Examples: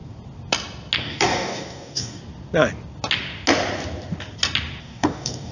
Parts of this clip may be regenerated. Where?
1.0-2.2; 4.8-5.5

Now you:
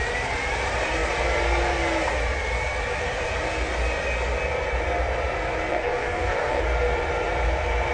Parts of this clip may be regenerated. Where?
5.7-6.6

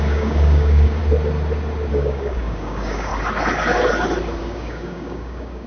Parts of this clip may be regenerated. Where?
0.0-1.0; 1.9-3.1; 4.4-5.7

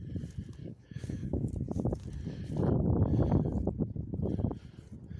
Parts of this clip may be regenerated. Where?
0.6-1.5

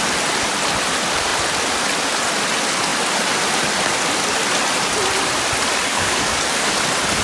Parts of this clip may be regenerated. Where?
5.9-6.7

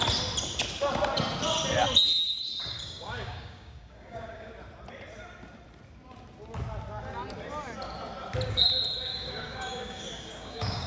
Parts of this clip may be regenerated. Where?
2.6-4.5; 9.1-10.9